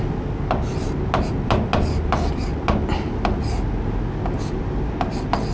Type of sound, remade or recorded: recorded